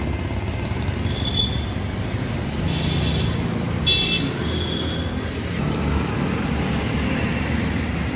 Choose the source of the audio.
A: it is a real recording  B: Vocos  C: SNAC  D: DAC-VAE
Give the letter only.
A